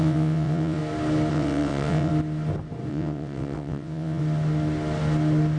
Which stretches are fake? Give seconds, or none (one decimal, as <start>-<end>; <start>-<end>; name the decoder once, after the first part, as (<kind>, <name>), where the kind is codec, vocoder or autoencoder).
0.0-0.8 (vocoder, WaveNeXt); 1.3-2.1; 2.9-4.2